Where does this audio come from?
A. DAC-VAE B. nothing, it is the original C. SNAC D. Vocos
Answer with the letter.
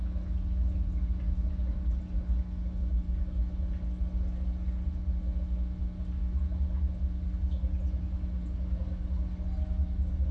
B